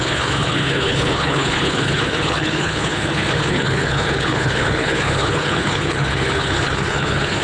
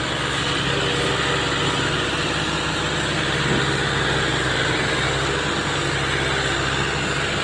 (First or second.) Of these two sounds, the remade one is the first